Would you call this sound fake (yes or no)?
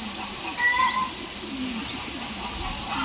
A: yes